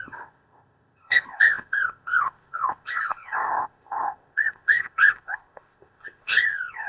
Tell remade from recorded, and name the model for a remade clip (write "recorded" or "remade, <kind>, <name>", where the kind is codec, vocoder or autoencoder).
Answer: remade, codec, ZipCodec